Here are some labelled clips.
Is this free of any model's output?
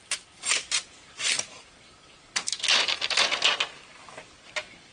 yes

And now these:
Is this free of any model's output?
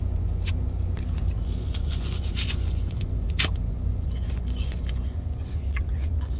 no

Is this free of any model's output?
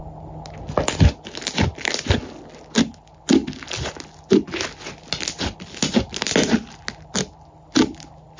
yes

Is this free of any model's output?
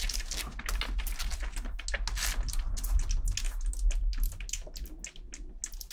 yes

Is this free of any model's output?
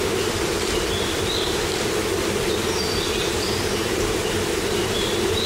no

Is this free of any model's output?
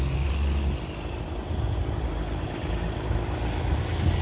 yes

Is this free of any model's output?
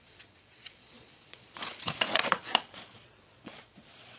no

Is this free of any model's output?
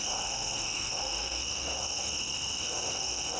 no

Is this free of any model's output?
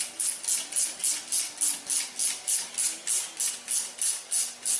yes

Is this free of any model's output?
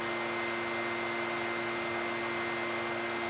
yes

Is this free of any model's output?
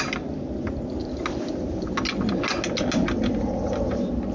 yes